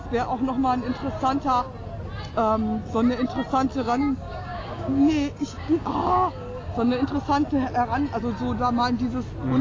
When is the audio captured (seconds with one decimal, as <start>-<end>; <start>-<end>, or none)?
0.0-3.7; 7.1-9.6